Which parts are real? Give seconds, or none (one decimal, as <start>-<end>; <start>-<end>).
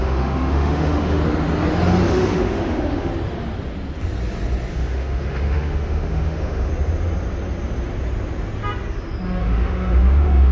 1.2-2.1; 3.1-4.7; 6.7-9.4